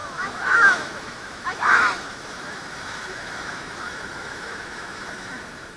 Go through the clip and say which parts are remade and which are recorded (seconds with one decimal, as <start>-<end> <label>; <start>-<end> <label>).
0.0-5.8 remade